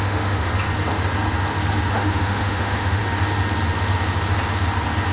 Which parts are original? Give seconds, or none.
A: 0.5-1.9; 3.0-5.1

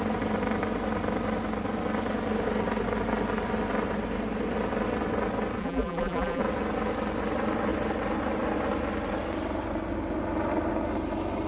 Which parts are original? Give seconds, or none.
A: 0.0-5.6; 6.4-11.5

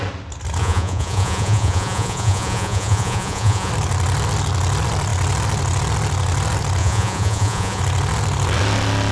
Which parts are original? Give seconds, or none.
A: 0.0-0.6; 3.7-6.8; 7.8-9.1

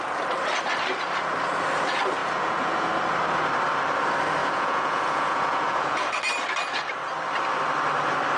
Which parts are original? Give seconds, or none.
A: 0.0-2.2; 2.9-4.4; 6.2-8.4

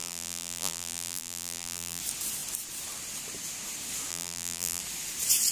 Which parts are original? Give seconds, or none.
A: 2.0-4.1; 4.8-5.5